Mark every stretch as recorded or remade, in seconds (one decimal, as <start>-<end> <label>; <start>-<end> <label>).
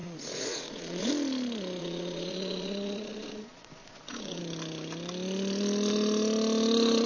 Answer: 0.0-1.1 remade; 1.1-1.8 recorded; 1.8-4.4 remade; 4.4-7.1 recorded